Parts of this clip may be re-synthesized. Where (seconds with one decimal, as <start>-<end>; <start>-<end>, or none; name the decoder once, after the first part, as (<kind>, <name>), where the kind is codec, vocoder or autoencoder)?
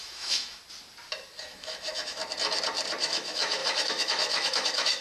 0.0-0.6 (autoencoder, DAC-VAE); 1.4-2.2; 3.0-5.0